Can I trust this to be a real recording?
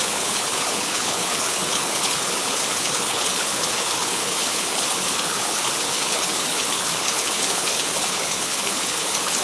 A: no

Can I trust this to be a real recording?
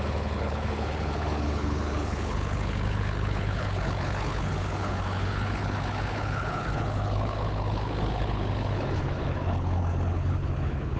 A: no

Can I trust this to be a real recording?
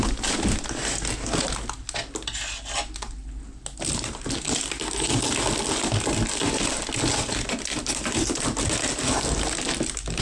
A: yes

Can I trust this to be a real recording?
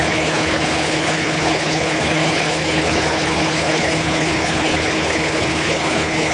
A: no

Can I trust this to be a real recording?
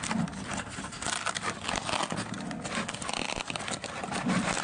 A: yes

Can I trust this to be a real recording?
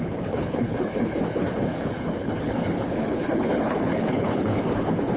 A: no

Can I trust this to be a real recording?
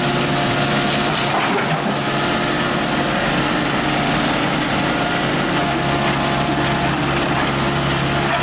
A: yes